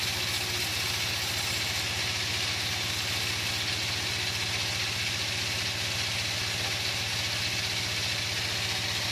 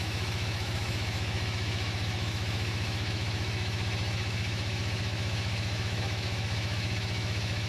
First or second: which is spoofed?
second